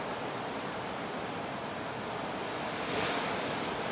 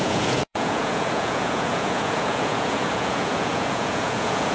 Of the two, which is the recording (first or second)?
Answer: first